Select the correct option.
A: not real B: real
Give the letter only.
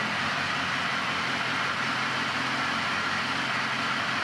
B